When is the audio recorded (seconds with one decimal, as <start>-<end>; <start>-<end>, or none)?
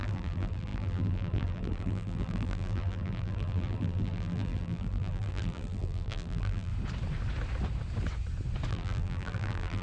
6.7-8.7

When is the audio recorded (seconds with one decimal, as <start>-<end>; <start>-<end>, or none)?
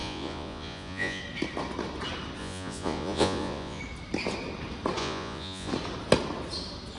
1.2-2.4; 3.8-5.0; 5.7-7.0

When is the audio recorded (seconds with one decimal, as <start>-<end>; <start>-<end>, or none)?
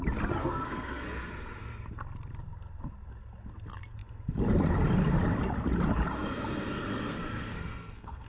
0.0-0.4; 1.3-6.9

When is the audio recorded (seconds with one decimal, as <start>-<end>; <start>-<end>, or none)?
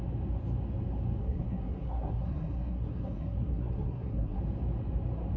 0.0-1.2; 4.4-5.4